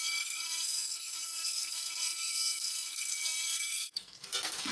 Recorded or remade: remade